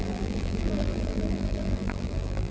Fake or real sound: fake